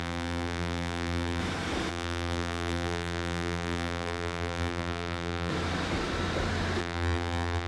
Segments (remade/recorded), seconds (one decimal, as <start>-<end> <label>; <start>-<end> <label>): 0.0-1.4 remade; 1.4-1.9 recorded; 1.9-5.5 remade; 5.5-6.8 recorded; 6.8-7.7 remade